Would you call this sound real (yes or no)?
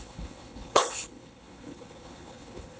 no